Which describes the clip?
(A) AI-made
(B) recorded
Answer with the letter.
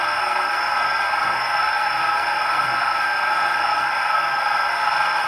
A